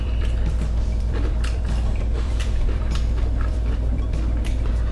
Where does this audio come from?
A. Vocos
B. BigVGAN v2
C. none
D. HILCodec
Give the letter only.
B